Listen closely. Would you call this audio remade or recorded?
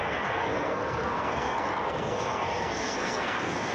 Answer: remade